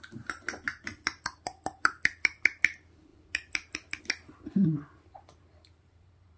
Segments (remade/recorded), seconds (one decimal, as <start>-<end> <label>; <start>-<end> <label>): 0.0-6.4 remade